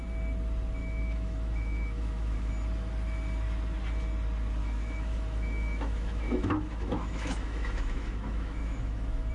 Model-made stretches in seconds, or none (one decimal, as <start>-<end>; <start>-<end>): 0.8-2.5; 4.6-9.3

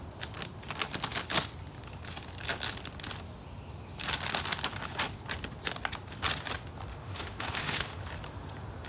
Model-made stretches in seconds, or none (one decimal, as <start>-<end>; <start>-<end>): 6.9-8.0